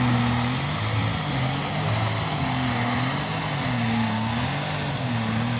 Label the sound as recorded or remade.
recorded